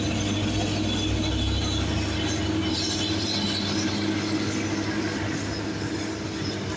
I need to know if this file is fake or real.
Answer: real